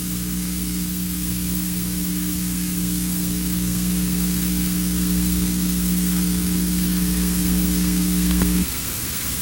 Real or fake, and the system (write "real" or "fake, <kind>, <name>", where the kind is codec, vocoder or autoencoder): fake, codec, SNAC